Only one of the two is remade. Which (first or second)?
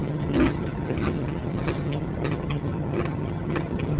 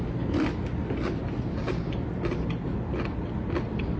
first